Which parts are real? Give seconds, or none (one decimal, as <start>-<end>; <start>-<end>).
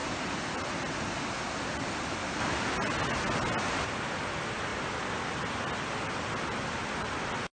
0.0-7.6